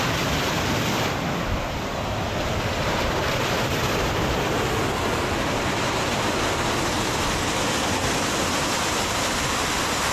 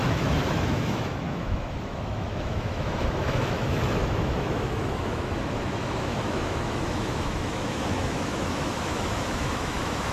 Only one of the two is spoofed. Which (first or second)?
second